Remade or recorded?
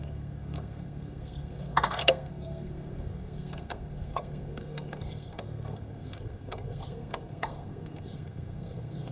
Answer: remade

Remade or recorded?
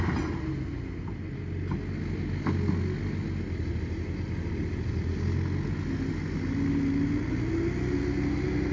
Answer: recorded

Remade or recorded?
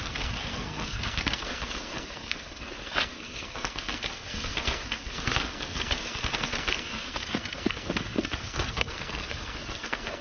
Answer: remade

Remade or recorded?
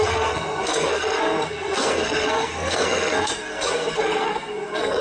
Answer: remade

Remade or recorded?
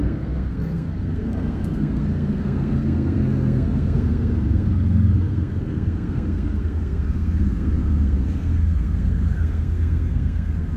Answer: remade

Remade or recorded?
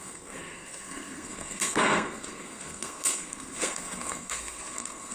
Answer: remade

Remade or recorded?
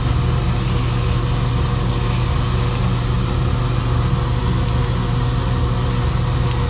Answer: recorded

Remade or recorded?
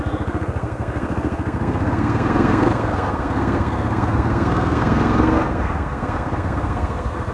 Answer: remade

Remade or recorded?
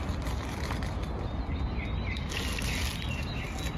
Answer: recorded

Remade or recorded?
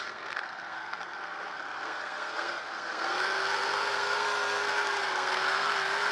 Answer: remade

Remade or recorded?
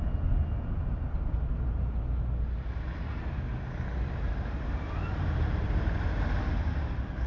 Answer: recorded